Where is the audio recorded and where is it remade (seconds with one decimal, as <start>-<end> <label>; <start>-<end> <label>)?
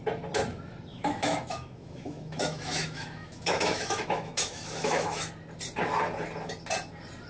0.0-0.9 recorded; 0.9-5.3 remade; 5.3-7.3 recorded